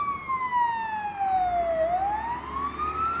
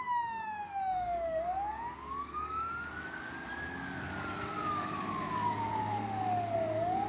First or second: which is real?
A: first